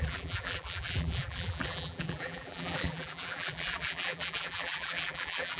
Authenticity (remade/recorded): remade